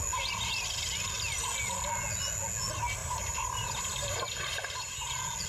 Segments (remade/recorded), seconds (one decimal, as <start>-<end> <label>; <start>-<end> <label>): 0.0-3.0 recorded; 3.0-5.1 remade; 5.1-5.5 recorded